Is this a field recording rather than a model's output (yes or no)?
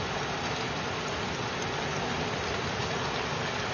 yes